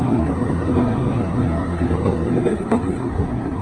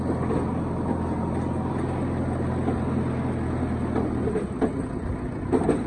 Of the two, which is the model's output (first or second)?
first